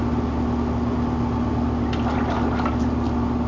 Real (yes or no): yes